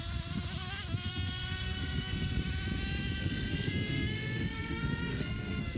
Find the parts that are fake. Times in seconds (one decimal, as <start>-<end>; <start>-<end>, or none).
1.1-2.4; 3.2-5.8